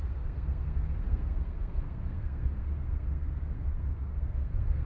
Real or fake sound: fake